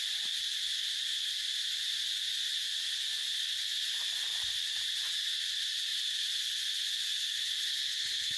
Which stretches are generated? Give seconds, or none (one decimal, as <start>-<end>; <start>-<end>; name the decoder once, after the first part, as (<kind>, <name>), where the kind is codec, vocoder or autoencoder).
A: 0.7-1.3 (vocoder, BigVGAN v2)